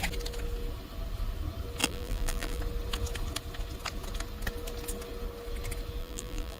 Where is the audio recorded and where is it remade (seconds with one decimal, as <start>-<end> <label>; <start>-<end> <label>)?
0.0-1.8 recorded; 1.8-2.6 remade; 2.6-6.0 recorded; 6.0-6.6 remade